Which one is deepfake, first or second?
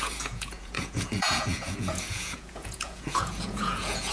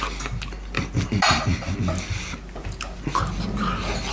first